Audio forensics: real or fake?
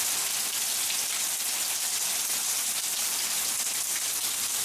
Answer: real